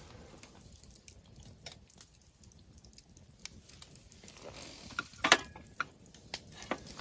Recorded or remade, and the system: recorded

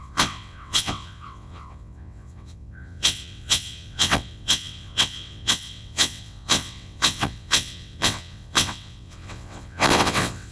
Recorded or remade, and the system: remade, vocoder, WaveNeXt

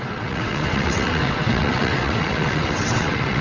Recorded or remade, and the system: remade, vocoder, WaveNeXt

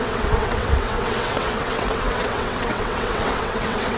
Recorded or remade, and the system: remade, vocoder, WaveNeXt